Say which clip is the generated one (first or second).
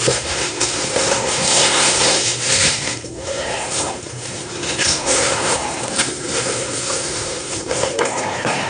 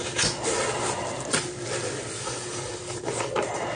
first